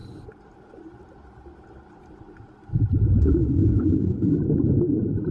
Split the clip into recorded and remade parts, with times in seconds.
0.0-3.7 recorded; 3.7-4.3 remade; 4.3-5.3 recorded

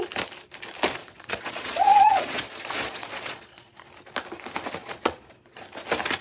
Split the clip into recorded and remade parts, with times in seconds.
0.0-1.0 recorded; 1.0-3.9 remade; 3.9-4.8 recorded; 4.8-5.6 remade; 5.6-6.2 recorded

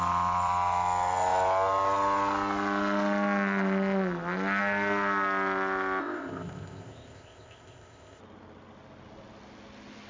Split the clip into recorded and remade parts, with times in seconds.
0.0-6.0 recorded; 6.0-8.2 remade; 8.2-10.1 recorded

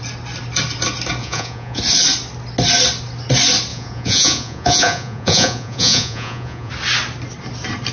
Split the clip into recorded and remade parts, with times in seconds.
0.0-1.2 recorded; 1.2-1.8 remade; 1.8-3.7 recorded; 3.7-6.7 remade; 6.7-7.9 recorded

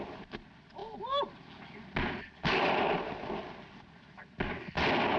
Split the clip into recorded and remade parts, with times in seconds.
0.0-5.2 recorded

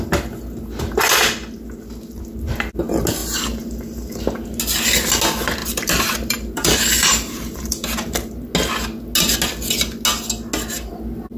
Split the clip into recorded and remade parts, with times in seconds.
0.0-3.2 recorded; 3.2-4.6 remade; 4.6-5.6 recorded; 5.6-8.5 remade; 8.5-11.4 recorded

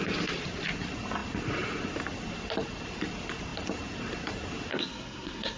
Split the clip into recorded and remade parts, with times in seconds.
0.0-4.7 recorded; 4.7-5.6 remade